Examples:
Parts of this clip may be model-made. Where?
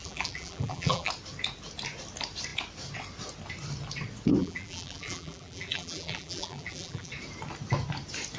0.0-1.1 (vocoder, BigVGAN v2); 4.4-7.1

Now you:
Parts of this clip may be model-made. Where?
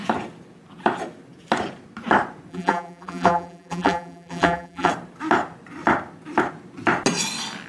2.5-4.9 (vocoder, BigVGAN v2)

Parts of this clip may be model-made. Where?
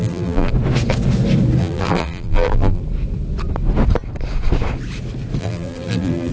0.0-0.5 (vocoder, BigVGAN v2); 1.6-2.8; 5.4-6.3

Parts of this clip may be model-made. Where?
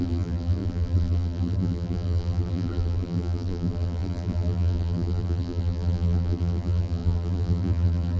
0.0-8.2 (vocoder, BigVGAN v2)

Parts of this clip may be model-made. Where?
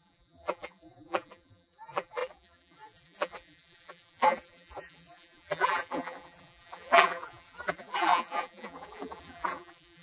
0.0-10.0 (vocoder, BigVGAN v2)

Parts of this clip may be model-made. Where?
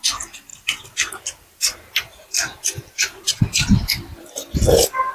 0.5-3.4 (vocoder, BigVGAN v2)